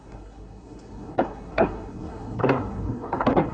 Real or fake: fake